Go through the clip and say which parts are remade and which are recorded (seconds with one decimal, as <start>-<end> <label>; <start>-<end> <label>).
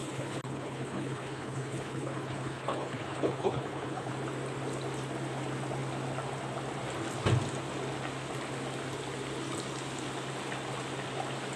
0.0-4.1 remade; 4.1-11.6 recorded